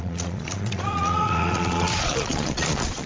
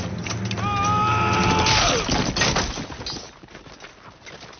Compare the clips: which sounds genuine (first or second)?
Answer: second